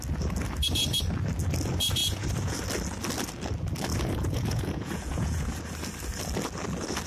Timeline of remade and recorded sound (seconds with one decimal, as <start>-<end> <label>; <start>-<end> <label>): 0.0-2.0 recorded; 2.0-2.6 remade; 2.6-3.9 recorded; 3.9-5.6 remade; 5.6-7.1 recorded